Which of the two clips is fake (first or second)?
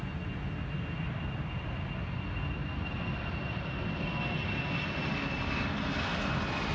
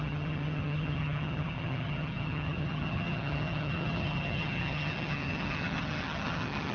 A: second